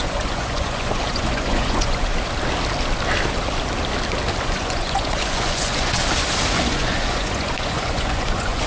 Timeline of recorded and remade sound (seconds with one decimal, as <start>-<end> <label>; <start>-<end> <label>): 0.0-2.1 remade; 2.1-4.4 recorded; 4.4-6.0 remade; 6.0-6.5 recorded; 6.5-8.7 remade